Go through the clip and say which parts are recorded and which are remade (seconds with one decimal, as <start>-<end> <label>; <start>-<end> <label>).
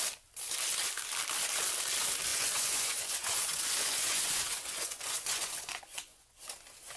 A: 0.0-2.3 recorded; 2.3-6.5 remade; 6.5-7.0 recorded